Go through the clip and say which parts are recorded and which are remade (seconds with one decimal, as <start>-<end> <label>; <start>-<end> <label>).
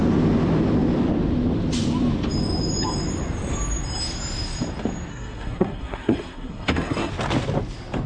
0.0-5.1 recorded; 5.1-7.1 remade; 7.1-8.1 recorded